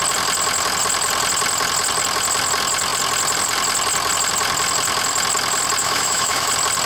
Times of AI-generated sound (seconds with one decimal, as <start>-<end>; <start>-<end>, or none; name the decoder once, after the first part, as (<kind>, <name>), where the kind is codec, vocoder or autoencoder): 5.8-6.5 (autoencoder, DAC-VAE)